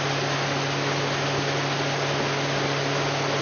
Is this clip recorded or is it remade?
recorded